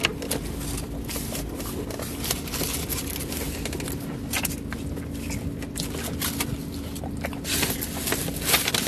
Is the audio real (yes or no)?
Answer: yes